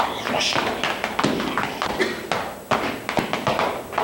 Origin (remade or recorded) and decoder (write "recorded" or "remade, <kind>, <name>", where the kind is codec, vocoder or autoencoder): recorded